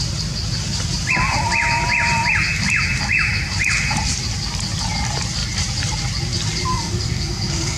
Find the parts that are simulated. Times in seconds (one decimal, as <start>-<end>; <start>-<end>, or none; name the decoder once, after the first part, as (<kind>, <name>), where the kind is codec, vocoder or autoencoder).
6.7-7.8 (codec, SNAC)